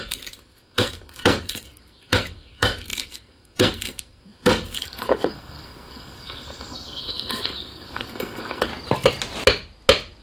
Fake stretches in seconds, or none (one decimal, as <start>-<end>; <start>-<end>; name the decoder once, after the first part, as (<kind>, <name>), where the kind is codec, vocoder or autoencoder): 0.0-8.7 (codec, SNAC)